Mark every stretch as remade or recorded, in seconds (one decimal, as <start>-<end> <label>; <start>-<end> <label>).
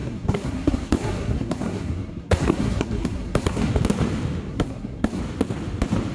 0.0-3.7 remade; 3.7-4.5 recorded; 4.5-5.2 remade; 5.2-6.1 recorded